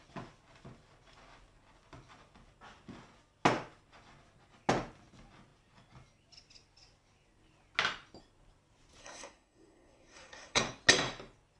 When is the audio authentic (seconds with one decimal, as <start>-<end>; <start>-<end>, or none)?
0.0-9.0; 10.6-11.6